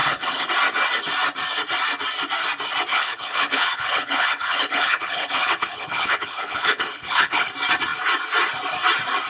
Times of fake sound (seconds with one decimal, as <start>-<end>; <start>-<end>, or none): 0.0-0.5; 2.9-7.5